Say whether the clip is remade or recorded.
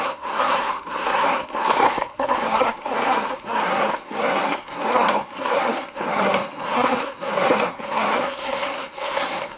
remade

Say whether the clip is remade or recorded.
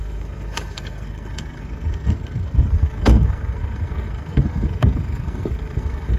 remade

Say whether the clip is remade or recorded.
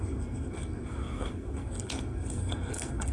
remade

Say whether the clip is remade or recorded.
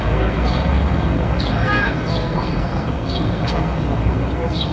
remade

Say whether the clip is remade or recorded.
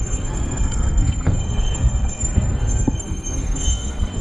remade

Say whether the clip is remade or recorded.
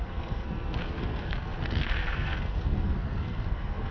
remade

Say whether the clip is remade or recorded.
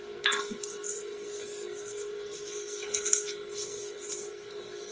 remade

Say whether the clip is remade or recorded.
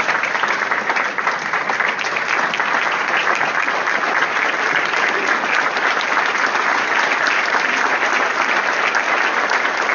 recorded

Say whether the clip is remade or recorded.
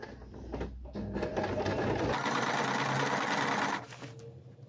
recorded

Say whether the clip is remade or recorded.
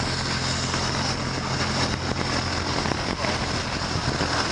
recorded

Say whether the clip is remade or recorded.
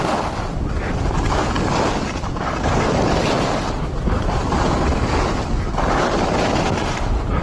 recorded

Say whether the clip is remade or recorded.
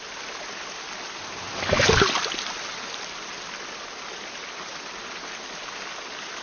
recorded